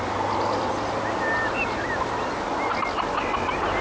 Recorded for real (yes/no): yes